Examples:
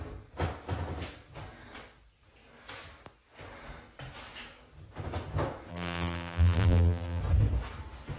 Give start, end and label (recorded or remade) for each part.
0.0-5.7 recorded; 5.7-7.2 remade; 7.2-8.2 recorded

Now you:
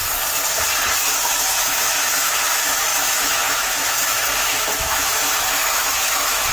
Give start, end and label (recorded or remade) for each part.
0.0-0.9 recorded; 0.9-6.5 remade